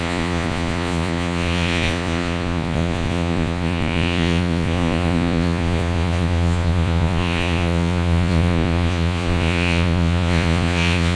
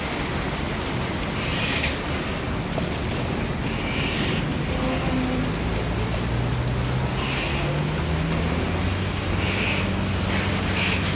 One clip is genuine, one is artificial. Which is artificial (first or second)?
first